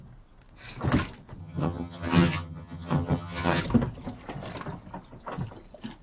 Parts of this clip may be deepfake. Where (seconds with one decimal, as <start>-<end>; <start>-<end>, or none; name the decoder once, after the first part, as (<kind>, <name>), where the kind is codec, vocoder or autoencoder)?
1.4-3.6 (vocoder, HiFi-GAN)